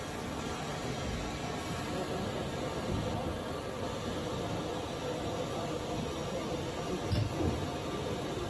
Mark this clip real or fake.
real